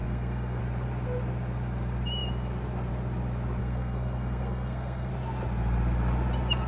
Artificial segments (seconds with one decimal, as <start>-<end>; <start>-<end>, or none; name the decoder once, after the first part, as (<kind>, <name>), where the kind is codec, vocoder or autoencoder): 0.0-0.6 (codec, SNAC); 3.6-5.1